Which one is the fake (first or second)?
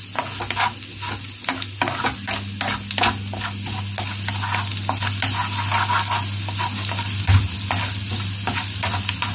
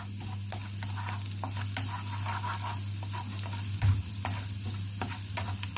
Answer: second